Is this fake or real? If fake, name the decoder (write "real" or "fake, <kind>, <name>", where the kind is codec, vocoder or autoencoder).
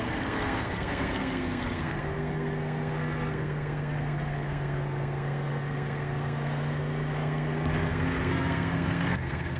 fake, codec, SNAC